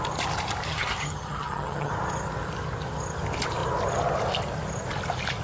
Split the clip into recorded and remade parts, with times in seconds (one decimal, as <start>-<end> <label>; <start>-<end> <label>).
0.0-0.7 recorded; 0.7-1.9 remade; 1.9-5.4 recorded